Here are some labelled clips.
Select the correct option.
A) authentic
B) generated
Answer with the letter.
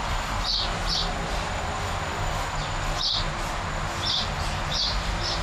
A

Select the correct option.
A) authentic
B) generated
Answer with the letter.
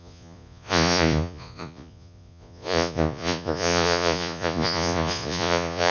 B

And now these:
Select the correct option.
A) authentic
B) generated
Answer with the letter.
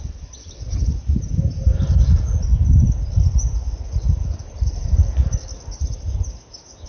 A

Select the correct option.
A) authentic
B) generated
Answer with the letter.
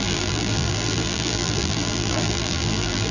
B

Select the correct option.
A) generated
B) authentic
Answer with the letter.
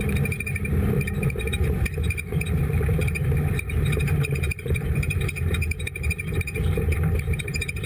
A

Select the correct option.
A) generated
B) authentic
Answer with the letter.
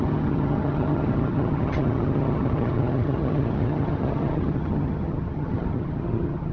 A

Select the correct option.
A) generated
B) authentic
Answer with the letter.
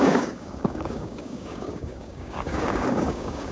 A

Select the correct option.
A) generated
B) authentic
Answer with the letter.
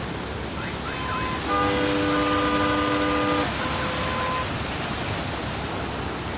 B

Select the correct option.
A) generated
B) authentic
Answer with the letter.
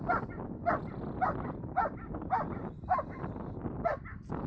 B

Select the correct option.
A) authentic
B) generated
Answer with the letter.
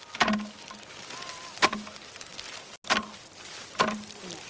A